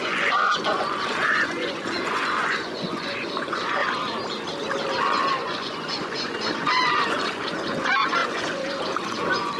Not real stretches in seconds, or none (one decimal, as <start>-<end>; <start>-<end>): 0.0-3.8; 5.0-9.6